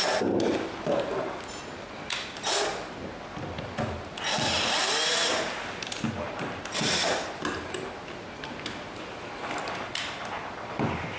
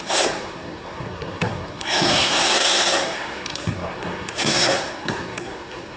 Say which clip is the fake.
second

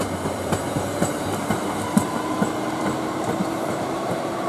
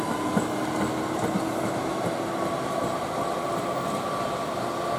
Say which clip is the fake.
first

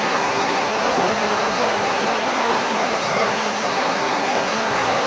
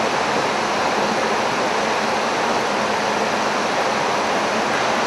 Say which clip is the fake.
first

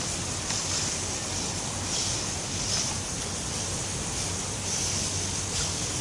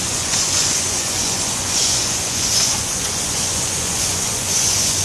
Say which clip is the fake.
second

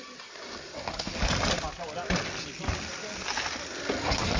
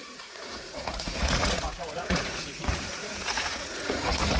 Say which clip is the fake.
second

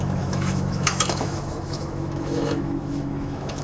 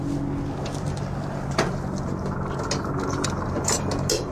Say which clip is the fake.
first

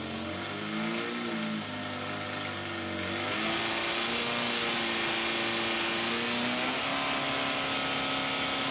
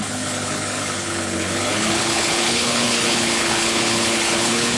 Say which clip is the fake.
second